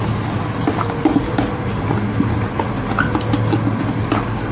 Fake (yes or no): no